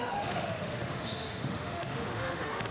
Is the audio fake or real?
fake